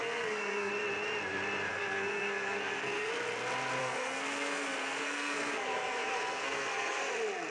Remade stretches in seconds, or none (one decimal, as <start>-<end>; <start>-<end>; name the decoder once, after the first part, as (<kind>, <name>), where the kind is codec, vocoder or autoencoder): 0.0-0.7 (codec, SNAC); 1.7-3.1; 3.8-7.0